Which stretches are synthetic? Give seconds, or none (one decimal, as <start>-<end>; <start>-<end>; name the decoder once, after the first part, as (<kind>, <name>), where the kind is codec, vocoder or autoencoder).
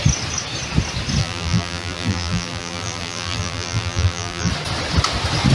1.2-4.5 (vocoder, BigVGAN v2)